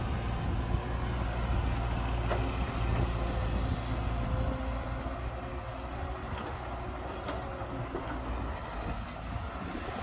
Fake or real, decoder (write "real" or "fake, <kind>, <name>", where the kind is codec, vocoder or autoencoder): real